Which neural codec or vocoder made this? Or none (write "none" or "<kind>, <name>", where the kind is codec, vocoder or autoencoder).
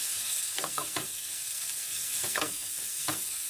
codec, SNAC